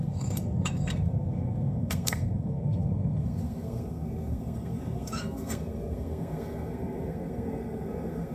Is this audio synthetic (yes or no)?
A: yes